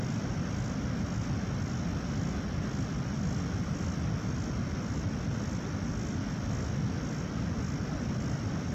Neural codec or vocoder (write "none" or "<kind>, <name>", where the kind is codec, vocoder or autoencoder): none